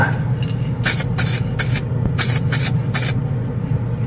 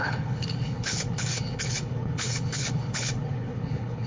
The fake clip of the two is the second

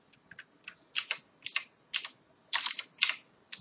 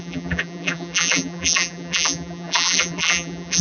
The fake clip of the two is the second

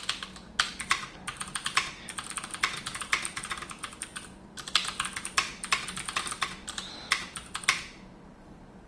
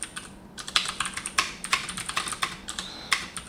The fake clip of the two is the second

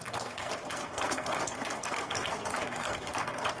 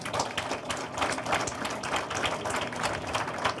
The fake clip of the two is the first